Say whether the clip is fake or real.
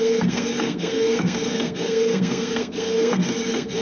fake